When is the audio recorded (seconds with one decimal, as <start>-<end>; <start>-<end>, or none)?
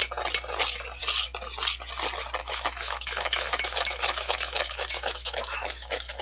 0.0-2.4